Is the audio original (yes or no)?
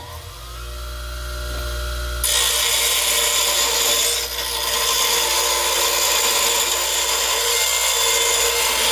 yes